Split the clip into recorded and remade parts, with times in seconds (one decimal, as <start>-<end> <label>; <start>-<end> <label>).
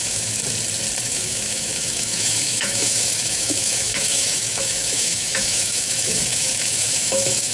0.0-0.4 remade; 0.4-1.0 recorded; 1.0-7.5 remade